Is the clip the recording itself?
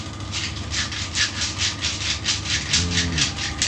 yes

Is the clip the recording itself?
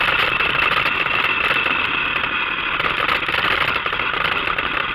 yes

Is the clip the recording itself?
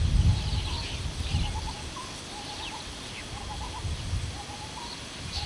yes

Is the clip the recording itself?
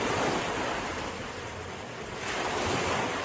yes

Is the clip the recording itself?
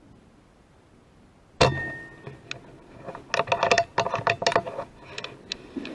yes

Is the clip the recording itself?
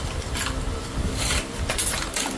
no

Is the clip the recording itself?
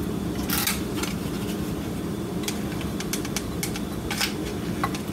yes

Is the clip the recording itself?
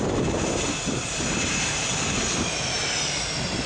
yes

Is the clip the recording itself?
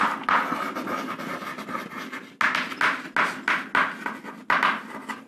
yes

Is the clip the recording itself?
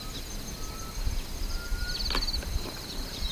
yes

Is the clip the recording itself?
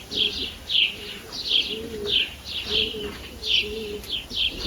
yes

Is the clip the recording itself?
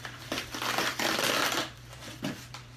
no